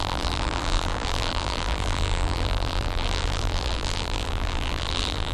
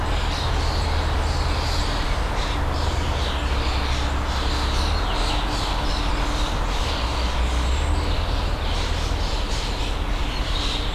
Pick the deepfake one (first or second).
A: first